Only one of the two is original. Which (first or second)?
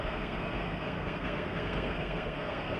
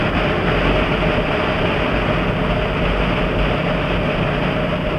second